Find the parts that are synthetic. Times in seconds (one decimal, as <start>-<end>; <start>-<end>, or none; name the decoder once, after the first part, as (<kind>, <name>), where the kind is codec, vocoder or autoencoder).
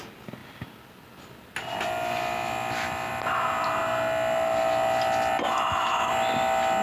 none